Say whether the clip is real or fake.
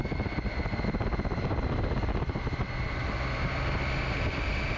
real